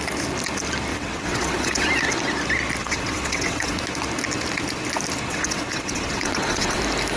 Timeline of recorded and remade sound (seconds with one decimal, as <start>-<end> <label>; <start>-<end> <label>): 0.0-0.9 recorded; 0.9-1.9 remade; 1.9-2.8 recorded; 2.8-3.8 remade; 3.8-5.3 recorded; 5.3-6.8 remade; 6.8-7.2 recorded

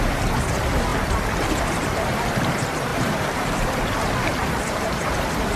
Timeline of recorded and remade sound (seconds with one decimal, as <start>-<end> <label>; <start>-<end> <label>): 0.0-2.9 recorded; 2.9-3.8 remade; 3.8-4.3 recorded; 4.3-5.0 remade; 5.0-5.6 recorded